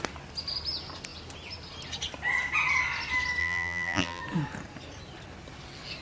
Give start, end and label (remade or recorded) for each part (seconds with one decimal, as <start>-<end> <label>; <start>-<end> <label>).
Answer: 0.0-3.4 recorded; 3.4-4.2 remade; 4.2-6.0 recorded